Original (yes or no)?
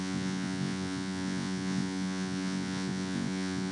no